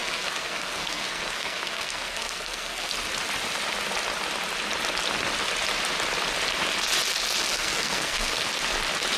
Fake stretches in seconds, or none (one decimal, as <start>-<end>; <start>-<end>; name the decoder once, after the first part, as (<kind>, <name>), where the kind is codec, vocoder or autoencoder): 0.0-2.9 (codec, SNAC); 7.5-8.5